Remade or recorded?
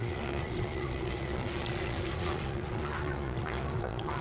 remade